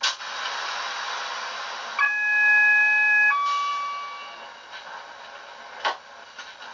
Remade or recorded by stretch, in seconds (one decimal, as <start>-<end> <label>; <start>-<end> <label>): 0.0-6.7 recorded